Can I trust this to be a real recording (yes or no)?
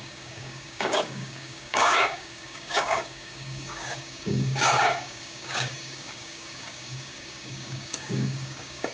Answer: no